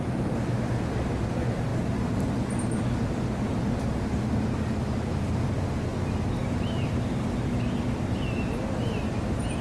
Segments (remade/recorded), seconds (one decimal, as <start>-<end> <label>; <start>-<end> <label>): 0.0-9.6 recorded